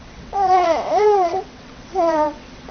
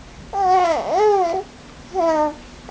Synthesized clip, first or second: first